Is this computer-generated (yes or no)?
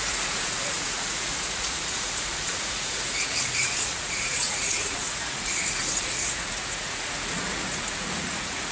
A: yes